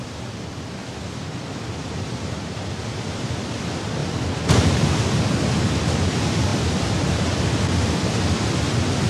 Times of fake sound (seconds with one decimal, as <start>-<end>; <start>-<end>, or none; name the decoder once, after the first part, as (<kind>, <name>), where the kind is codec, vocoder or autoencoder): 0.0-4.0 (vocoder, BigVGAN v2); 4.6-9.1